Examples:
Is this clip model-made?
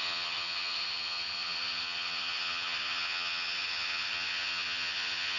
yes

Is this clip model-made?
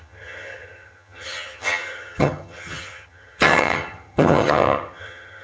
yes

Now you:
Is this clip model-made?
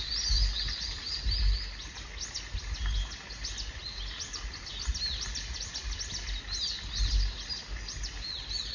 no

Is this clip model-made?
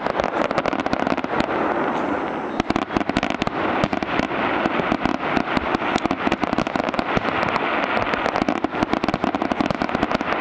no